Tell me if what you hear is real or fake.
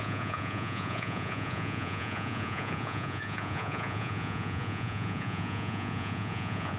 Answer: fake